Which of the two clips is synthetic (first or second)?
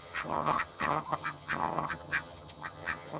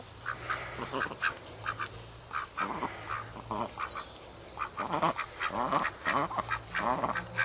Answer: first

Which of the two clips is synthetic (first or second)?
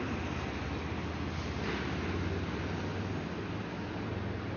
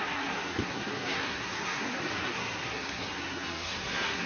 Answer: second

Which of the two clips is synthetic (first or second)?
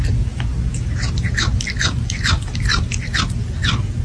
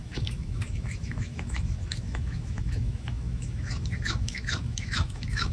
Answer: second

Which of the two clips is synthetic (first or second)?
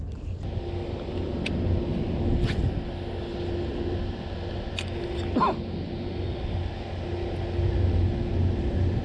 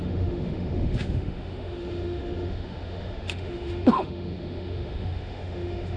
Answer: second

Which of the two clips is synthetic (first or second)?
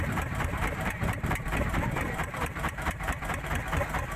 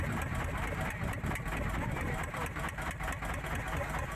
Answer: first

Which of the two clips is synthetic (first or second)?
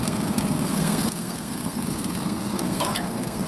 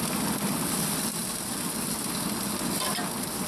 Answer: first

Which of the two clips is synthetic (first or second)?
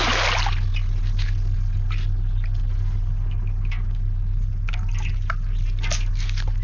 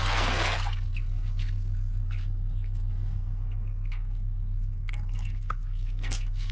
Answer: second